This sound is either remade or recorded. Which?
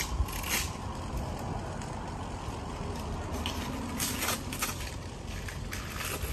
recorded